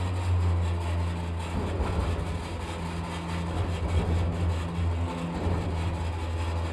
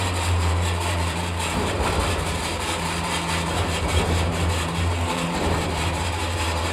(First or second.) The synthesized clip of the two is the second